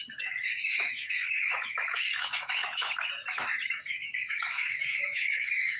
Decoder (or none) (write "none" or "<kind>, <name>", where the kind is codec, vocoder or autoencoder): autoencoder, DAC-VAE